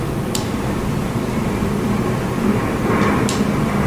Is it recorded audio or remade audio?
recorded